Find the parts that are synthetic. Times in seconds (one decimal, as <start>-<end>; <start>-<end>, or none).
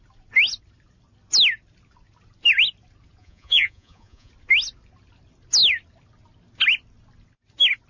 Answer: 3.2-4.3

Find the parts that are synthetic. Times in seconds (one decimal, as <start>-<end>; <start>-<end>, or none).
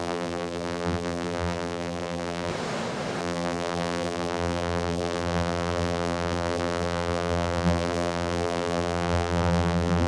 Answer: 0.0-2.5; 3.2-10.1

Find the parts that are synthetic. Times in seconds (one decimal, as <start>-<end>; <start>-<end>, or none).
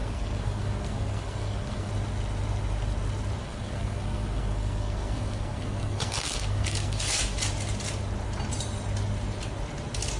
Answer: 0.0-1.9; 3.4-7.2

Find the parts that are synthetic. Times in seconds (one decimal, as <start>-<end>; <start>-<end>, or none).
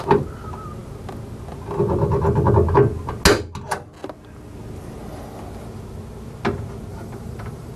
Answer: 6.9-7.8